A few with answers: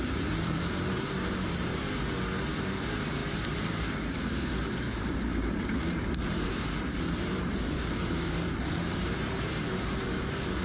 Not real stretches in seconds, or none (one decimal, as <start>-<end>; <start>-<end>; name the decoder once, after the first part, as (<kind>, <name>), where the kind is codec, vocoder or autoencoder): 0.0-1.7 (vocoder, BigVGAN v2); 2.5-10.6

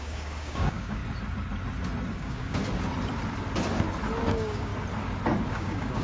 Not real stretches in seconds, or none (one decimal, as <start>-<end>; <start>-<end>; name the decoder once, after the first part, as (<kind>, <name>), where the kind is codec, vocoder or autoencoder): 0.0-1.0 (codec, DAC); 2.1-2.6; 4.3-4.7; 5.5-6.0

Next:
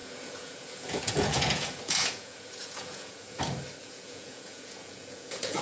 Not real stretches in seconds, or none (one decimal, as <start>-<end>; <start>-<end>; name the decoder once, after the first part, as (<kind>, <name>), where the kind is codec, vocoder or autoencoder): 0.0-3.4 (vocoder, Vocos); 3.8-5.6

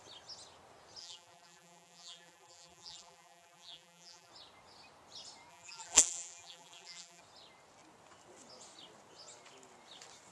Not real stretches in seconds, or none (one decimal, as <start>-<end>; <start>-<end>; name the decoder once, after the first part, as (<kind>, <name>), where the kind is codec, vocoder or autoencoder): 1.0-4.3 (vocoder, BigVGAN v2); 5.5-7.2

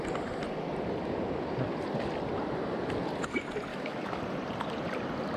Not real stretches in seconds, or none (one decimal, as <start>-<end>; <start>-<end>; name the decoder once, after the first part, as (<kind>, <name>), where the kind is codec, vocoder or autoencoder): 3.7-4.2 (autoencoder, DAC-VAE)